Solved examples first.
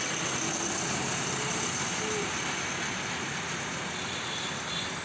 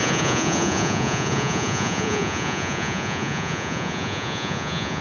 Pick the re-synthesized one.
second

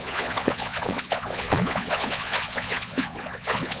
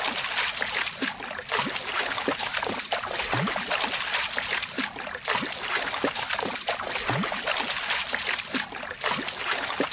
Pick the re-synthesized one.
first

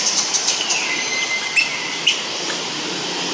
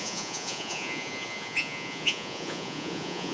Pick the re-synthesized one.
second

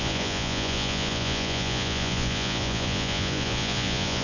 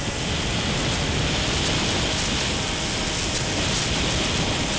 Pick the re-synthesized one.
first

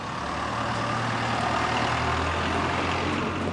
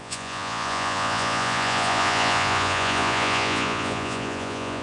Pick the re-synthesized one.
second